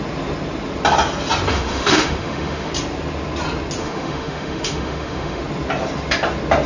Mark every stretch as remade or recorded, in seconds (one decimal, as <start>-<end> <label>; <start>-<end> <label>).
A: 0.0-1.5 recorded; 1.5-2.7 remade; 2.7-3.8 recorded; 3.8-5.4 remade; 5.4-6.7 recorded